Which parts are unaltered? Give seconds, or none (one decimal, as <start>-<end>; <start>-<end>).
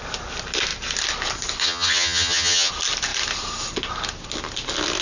0.0-1.6; 2.7-5.0